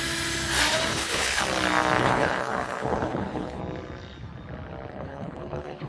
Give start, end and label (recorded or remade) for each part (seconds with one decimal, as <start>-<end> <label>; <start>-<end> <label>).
0.0-0.9 recorded; 0.9-1.4 remade; 1.4-2.0 recorded; 2.0-3.6 remade; 3.6-4.9 recorded; 4.9-5.9 remade